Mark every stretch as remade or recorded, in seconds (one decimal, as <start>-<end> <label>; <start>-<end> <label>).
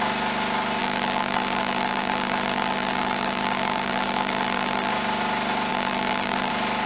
0.0-0.8 recorded; 0.8-4.9 remade; 4.9-5.7 recorded; 5.7-6.5 remade; 6.5-6.9 recorded